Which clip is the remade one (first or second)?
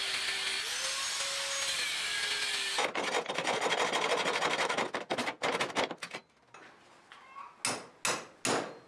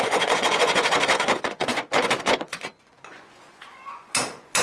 second